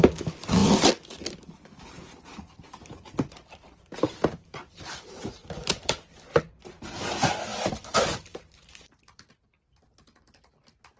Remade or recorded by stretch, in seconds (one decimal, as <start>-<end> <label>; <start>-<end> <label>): 0.0-4.3 recorded; 4.3-6.4 remade; 6.4-11.0 recorded